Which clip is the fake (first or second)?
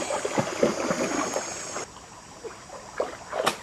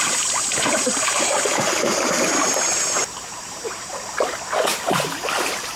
second